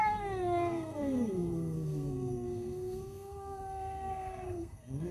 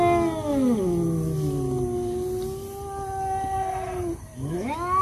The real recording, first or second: second